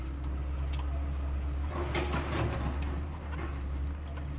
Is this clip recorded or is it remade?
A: recorded